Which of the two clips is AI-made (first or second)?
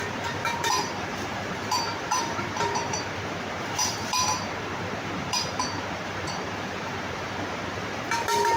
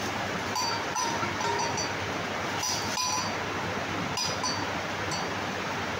first